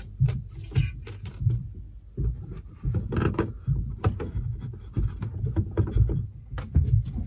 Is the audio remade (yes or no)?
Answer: no